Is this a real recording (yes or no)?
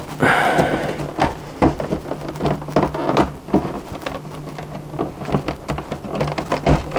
yes